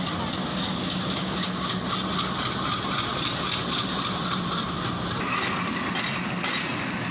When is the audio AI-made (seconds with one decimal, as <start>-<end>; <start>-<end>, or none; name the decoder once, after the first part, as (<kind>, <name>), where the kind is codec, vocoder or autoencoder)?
0.5-1.9 (codec, DAC)